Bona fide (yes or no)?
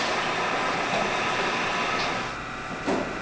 yes